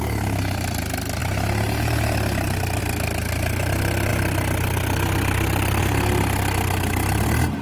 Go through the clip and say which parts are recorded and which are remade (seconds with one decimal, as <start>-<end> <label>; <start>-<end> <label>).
0.0-7.6 recorded